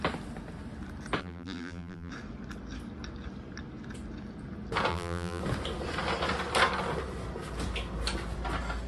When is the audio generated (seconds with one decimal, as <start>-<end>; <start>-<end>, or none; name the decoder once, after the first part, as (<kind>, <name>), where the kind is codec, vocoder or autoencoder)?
1.2-2.1 (vocoder, BigVGAN v2); 4.9-5.4